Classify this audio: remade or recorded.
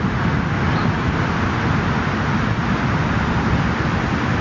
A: recorded